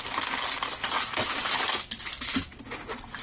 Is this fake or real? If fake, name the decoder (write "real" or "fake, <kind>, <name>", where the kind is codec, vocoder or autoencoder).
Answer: real